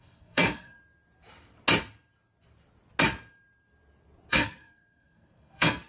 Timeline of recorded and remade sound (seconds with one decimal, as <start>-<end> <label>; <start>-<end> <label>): 0.0-0.8 remade; 0.8-4.3 recorded; 4.3-5.9 remade